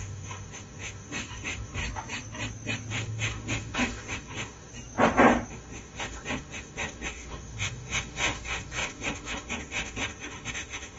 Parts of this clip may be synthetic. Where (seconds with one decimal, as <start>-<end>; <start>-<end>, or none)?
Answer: 0.0-1.8; 2.9-4.7; 5.5-11.0